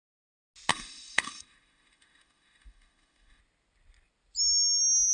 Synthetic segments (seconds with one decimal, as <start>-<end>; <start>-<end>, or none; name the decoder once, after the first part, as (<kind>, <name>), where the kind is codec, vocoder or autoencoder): 0.7-3.4 (autoencoder, DAC-VAE)